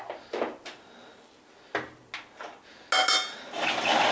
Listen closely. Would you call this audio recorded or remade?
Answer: recorded